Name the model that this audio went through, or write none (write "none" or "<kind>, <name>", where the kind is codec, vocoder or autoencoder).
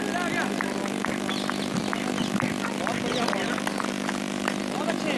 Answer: none